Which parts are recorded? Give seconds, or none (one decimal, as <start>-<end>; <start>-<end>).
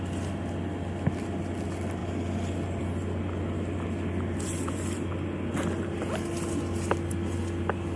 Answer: 0.0-8.0